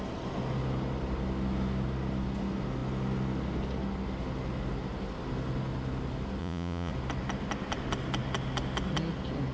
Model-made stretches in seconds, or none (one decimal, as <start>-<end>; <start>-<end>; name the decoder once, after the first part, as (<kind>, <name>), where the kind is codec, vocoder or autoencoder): 6.4-6.9 (vocoder, Vocos)